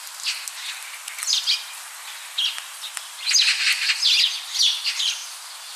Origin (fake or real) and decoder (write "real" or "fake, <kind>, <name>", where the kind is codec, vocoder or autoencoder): real